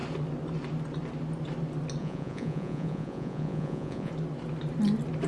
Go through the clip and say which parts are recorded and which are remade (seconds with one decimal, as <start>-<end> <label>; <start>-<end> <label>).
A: 0.0-2.0 recorded; 2.0-4.1 remade; 4.1-5.3 recorded